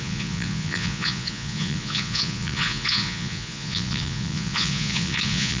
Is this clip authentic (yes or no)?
no